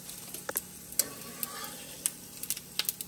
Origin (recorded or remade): recorded